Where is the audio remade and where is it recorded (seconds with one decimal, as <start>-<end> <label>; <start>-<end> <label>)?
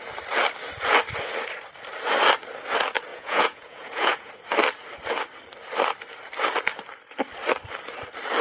0.0-3.1 recorded; 3.1-4.3 remade; 4.3-8.4 recorded